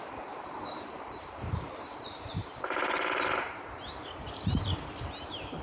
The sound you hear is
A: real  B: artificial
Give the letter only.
B